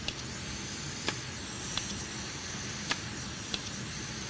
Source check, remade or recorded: recorded